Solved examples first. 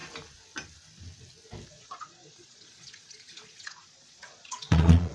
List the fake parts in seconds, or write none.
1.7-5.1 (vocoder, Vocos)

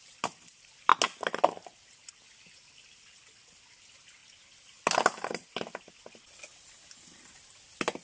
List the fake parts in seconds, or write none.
none

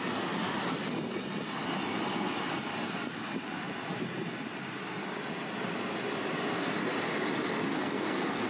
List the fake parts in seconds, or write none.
7.7-8.5 (codec, SNAC)

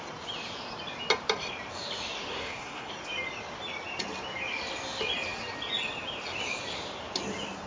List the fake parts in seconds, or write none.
2.3-2.9 (codec, SNAC)